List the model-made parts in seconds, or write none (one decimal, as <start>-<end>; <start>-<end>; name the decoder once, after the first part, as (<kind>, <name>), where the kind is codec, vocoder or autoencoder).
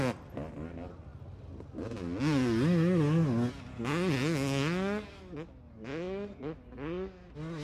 none